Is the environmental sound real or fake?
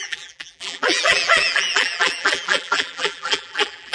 fake